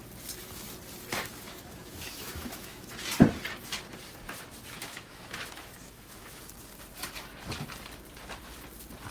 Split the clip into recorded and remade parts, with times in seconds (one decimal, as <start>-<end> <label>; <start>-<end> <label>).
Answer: 0.0-1.1 recorded; 1.1-2.9 remade; 2.9-4.8 recorded; 4.8-6.4 remade; 6.4-9.1 recorded